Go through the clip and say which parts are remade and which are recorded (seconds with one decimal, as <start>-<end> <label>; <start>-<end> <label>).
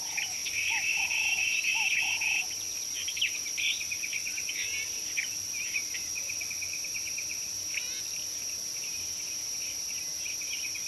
0.0-0.4 recorded; 0.4-1.5 remade; 1.5-3.0 recorded; 3.0-6.5 remade; 6.5-10.9 recorded